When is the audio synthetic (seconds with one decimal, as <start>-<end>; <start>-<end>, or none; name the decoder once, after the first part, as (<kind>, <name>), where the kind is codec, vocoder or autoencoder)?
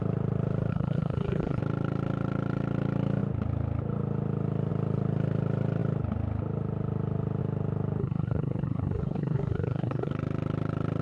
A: 0.7-1.6 (codec, SNAC); 8.0-10.1